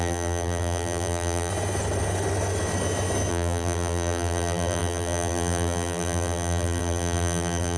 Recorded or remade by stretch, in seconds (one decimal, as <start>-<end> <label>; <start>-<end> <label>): 0.0-1.5 remade; 1.5-3.3 recorded; 3.3-7.8 remade